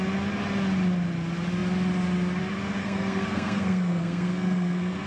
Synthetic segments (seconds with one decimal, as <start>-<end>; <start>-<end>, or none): 2.8-5.1